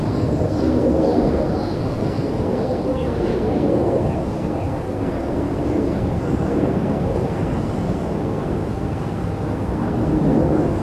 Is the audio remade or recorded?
remade